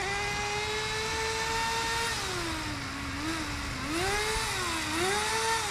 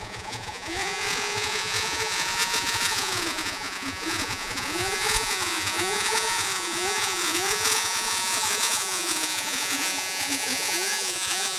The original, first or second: first